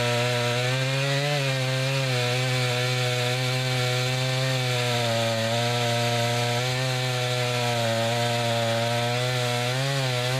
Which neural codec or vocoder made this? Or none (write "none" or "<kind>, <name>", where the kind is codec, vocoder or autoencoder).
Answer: none